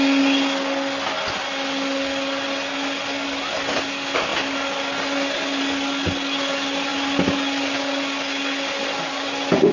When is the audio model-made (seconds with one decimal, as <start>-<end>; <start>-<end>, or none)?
none